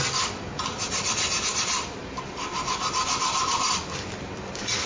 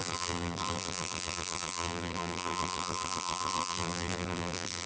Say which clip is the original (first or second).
first